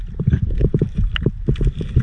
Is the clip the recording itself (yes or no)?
yes